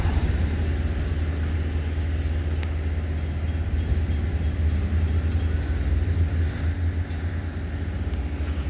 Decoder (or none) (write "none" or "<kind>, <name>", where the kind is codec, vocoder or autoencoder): none